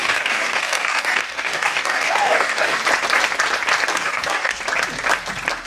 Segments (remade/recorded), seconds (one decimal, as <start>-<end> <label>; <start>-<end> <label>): 0.0-2.8 remade; 2.8-3.9 recorded; 3.9-4.6 remade; 4.6-5.7 recorded

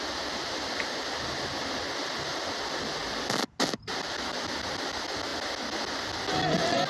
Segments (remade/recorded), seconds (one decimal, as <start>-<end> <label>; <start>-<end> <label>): 0.0-6.9 recorded

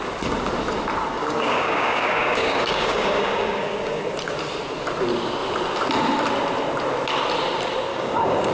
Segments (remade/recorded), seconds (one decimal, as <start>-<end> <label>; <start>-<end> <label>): 0.0-1.1 recorded; 1.1-4.0 remade; 4.0-7.9 recorded; 7.9-8.5 remade

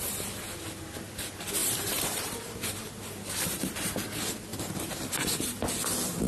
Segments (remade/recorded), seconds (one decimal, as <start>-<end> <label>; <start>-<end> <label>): 0.0-1.6 recorded; 1.6-2.9 remade; 2.9-4.5 recorded; 4.5-5.6 remade; 5.6-6.3 recorded

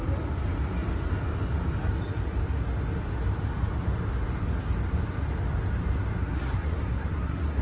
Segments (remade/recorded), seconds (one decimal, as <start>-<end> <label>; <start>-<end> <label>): 0.0-6.2 recorded; 6.2-7.6 remade

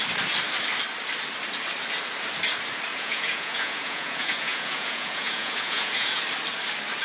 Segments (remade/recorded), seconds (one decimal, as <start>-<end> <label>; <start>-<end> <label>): 0.0-2.9 recorded; 2.9-6.2 remade; 6.2-7.0 recorded

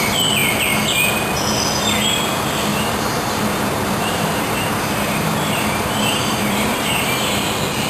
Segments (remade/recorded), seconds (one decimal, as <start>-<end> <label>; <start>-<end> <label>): 0.0-2.7 recorded; 2.7-7.4 remade; 7.4-7.9 recorded

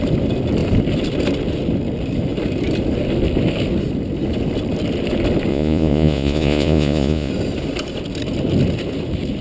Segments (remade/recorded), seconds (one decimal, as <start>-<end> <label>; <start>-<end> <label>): 0.0-5.5 recorded; 5.5-7.3 remade; 7.3-9.4 recorded